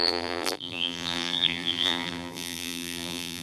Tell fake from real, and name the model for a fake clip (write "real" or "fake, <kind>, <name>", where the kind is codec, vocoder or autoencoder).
fake, vocoder, BigVGAN v2